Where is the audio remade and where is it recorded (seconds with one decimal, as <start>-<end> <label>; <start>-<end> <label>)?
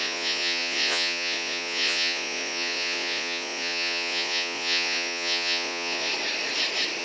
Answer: 0.0-6.1 remade; 6.1-7.0 recorded